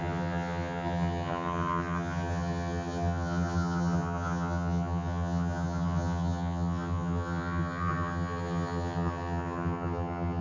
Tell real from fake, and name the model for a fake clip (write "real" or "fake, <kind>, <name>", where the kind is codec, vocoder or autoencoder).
fake, vocoder, HiFi-GAN